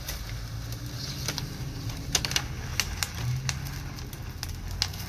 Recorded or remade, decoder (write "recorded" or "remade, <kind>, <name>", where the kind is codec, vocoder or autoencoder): recorded